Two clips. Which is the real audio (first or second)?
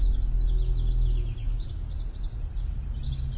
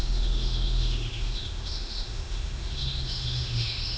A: first